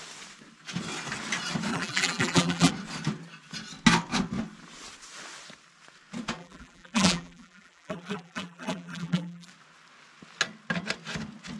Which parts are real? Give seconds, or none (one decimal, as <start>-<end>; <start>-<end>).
0.0-1.7; 2.7-6.4; 9.5-11.6